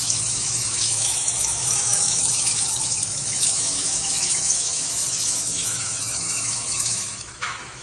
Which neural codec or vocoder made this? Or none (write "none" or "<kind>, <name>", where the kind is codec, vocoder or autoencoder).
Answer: autoencoder, DAC-VAE